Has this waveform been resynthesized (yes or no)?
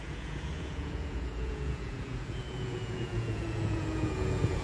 yes